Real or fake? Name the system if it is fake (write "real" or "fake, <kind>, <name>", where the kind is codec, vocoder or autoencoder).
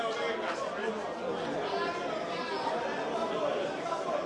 real